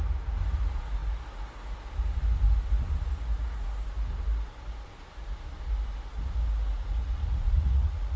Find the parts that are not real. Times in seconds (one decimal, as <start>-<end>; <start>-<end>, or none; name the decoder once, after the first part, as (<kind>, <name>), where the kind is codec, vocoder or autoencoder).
7.0-8.2 (vocoder, Vocos)